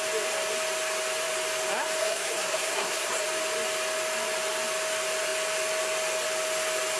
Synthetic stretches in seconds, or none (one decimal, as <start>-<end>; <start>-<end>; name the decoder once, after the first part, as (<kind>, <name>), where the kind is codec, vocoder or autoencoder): 2.0-3.2 (codec, SNAC)